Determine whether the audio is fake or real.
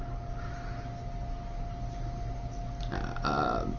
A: real